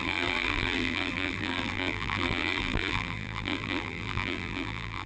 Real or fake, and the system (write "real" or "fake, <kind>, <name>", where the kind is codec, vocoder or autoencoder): fake, vocoder, BigVGAN v2